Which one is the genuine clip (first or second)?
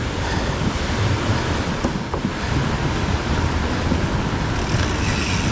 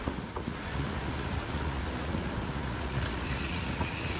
first